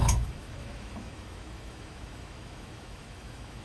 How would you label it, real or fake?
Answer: fake